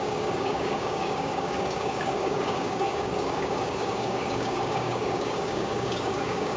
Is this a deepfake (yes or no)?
yes